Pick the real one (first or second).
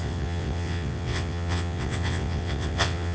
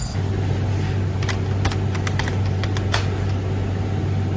second